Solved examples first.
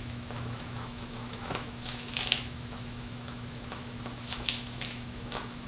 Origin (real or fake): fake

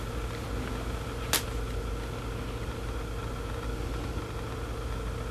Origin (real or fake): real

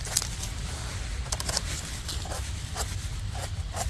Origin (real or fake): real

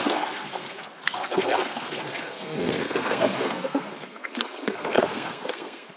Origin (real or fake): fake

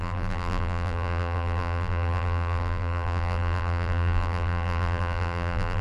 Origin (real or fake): fake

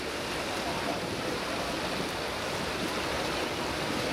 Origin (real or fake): real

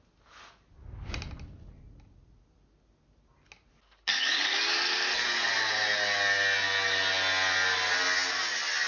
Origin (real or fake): real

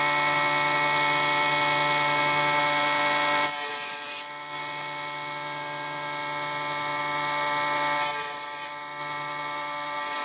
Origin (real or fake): real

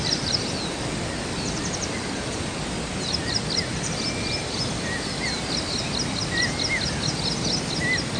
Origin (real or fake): real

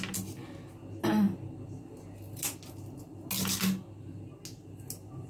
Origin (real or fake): real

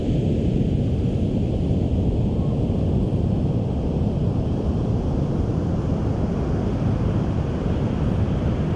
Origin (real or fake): real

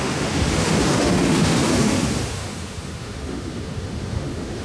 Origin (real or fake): fake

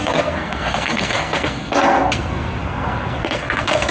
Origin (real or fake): fake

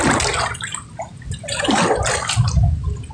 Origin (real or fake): real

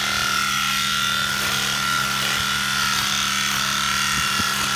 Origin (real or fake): real